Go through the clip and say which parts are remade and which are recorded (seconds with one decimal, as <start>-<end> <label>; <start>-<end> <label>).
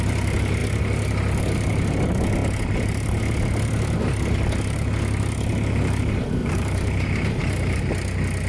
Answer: 0.0-6.4 recorded; 6.4-7.8 remade; 7.8-8.5 recorded